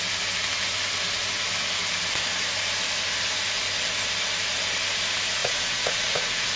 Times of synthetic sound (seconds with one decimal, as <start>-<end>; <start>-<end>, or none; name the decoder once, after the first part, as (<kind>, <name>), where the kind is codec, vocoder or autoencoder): 5.4-6.6 (vocoder, Vocos)